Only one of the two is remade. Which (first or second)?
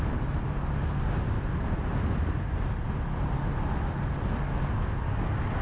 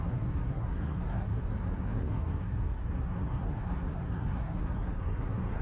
second